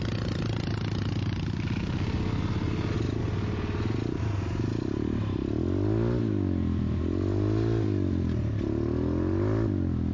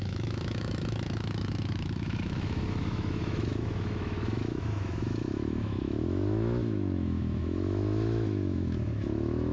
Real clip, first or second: first